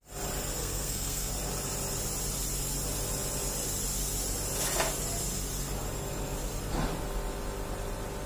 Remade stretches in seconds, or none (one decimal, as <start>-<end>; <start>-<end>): 0.6-1.3